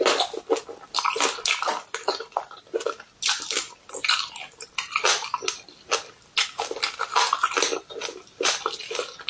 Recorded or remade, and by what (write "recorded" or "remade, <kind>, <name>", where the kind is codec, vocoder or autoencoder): recorded